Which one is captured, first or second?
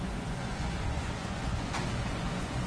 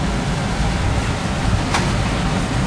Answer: second